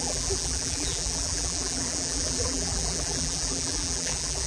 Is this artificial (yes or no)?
yes